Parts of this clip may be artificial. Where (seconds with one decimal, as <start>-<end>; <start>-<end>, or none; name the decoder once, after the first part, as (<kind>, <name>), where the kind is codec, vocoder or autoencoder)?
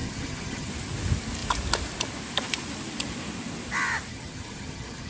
0.0-0.7 (vocoder, HiFi-GAN); 4.1-5.1